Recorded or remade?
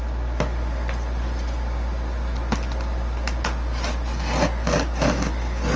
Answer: recorded